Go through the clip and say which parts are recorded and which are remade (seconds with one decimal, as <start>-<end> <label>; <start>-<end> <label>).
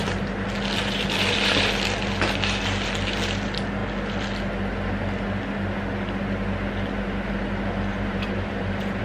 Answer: 0.0-7.9 recorded; 7.9-9.0 remade